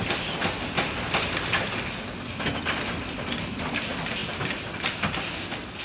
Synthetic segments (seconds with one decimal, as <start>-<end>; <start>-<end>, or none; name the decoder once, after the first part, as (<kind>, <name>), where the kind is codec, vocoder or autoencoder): none